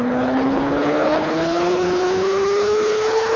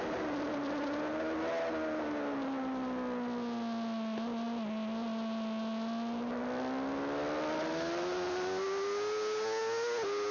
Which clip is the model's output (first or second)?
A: first